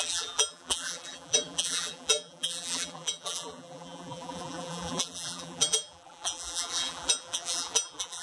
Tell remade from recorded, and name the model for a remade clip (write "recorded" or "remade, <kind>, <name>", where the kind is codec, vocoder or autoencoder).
remade, vocoder, BigVGAN v2